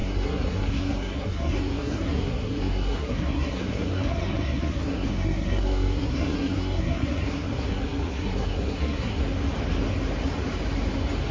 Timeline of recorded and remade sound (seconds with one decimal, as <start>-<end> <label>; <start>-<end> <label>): 0.0-9.2 remade; 9.2-11.3 recorded